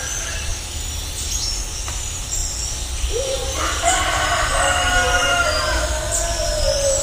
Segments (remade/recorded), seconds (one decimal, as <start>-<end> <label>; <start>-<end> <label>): 0.0-7.0 recorded